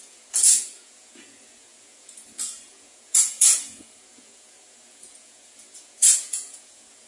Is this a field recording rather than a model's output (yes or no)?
no